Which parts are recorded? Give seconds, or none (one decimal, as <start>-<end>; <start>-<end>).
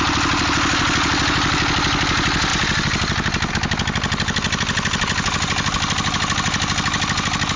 0.0-7.6